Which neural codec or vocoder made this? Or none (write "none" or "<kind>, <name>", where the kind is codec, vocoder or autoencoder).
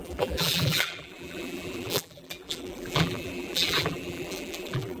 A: vocoder, BigVGAN v2